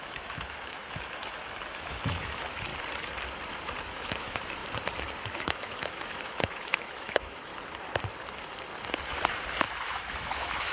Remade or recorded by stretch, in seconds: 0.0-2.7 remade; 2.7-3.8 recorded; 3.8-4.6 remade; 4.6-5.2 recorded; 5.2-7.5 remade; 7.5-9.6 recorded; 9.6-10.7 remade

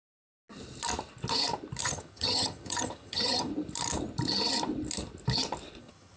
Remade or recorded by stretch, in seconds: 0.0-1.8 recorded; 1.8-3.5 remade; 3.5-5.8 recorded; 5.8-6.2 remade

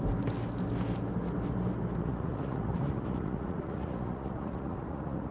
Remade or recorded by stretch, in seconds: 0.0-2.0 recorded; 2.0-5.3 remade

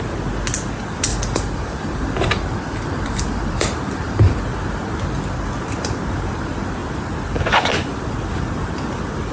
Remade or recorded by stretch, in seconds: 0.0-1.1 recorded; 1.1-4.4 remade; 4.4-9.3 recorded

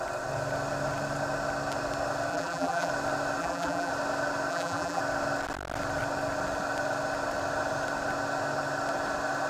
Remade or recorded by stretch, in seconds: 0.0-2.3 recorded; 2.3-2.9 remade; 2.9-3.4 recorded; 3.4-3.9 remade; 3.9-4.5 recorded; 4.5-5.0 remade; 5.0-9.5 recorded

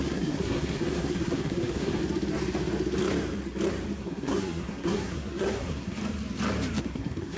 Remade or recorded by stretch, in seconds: 0.0-2.0 remade; 2.0-4.0 recorded; 4.0-6.0 remade; 6.0-6.8 recorded; 6.8-7.4 remade

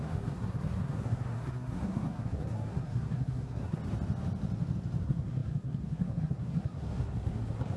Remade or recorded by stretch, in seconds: 0.0-3.8 remade; 3.8-5.0 recorded; 5.0-7.8 remade

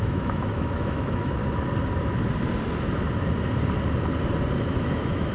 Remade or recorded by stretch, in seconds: 0.0-1.4 remade; 1.4-4.6 recorded; 4.6-5.3 remade